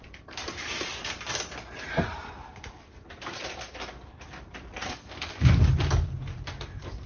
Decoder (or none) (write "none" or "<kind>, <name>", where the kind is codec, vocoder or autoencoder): vocoder, BigVGAN v2